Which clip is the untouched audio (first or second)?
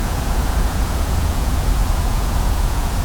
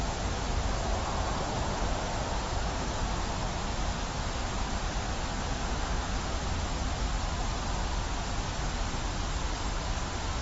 second